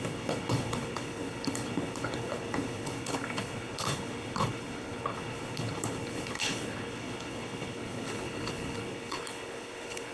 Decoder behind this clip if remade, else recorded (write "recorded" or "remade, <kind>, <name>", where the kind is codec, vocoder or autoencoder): remade, codec, HILCodec